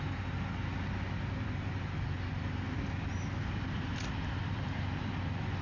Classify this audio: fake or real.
real